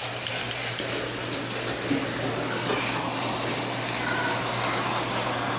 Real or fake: real